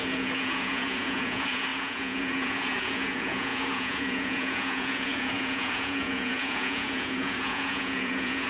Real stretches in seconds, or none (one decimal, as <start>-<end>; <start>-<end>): none